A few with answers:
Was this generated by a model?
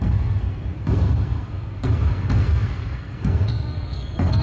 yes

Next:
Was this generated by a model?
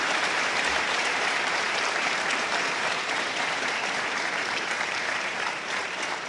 yes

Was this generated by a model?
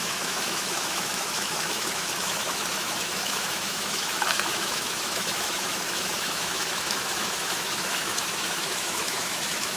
yes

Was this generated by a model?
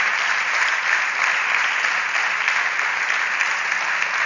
no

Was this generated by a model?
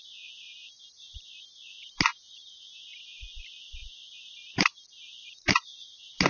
no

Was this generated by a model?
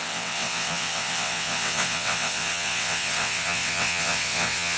yes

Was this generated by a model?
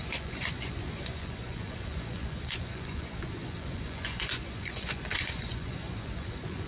yes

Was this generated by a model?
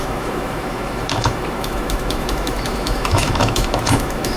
yes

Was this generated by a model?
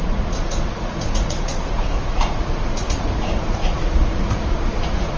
yes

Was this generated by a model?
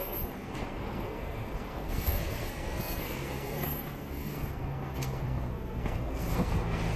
yes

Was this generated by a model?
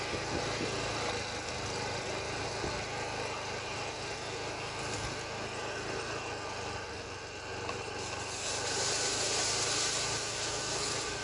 no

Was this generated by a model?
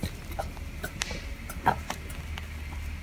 no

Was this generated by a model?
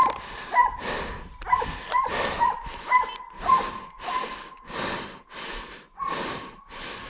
no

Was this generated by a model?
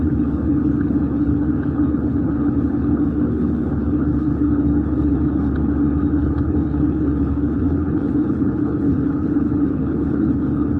yes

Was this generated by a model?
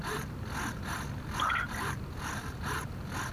no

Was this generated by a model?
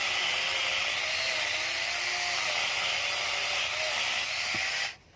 yes